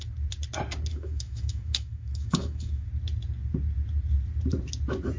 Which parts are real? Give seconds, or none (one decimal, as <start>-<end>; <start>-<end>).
0.0-0.9; 2.9-5.2